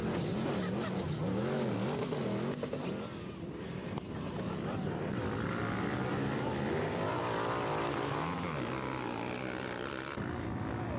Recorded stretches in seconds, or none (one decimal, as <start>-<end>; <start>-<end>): 0.0-11.0